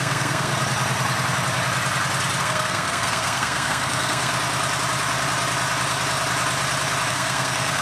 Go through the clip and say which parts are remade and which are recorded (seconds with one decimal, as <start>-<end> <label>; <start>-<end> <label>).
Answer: 0.0-0.5 remade; 0.5-2.4 recorded; 2.4-4.3 remade; 4.3-7.1 recorded; 7.1-7.8 remade